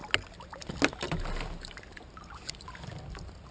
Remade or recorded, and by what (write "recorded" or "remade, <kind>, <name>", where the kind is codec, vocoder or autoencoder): recorded